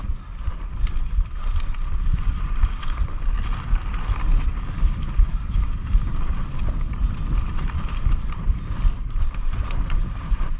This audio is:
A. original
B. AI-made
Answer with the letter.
B